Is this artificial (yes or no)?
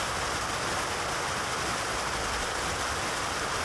no